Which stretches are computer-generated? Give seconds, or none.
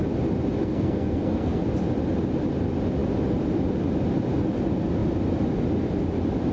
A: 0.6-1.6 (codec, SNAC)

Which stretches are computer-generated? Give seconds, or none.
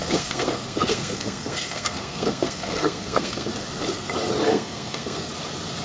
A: 0.0-3.5 (codec, SNAC); 4.5-5.3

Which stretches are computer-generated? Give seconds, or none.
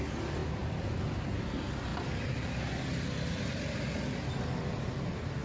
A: none